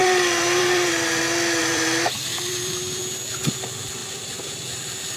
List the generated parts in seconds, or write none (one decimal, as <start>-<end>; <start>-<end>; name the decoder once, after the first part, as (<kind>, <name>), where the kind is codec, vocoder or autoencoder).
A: 0.0-0.9 (vocoder, BigVGAN v2); 1.6-3.0; 4.0-5.2